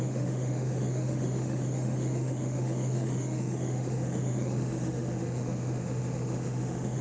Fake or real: fake